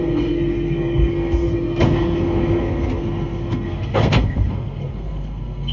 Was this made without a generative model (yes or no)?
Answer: no